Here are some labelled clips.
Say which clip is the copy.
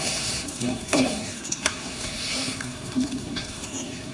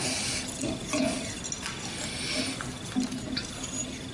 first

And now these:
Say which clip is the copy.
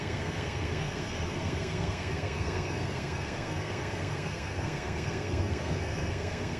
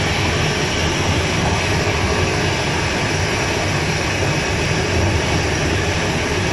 first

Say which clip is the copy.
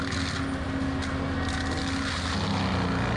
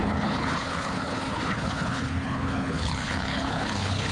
second